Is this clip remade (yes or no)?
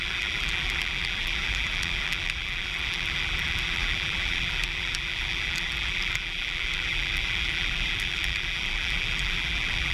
yes